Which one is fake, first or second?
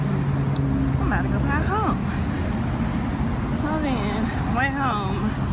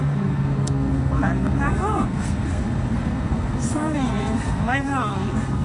second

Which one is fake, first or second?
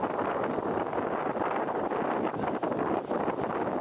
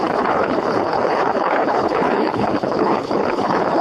second